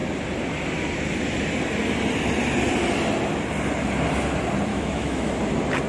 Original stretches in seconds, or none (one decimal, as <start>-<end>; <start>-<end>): 0.0-4.7; 5.3-5.9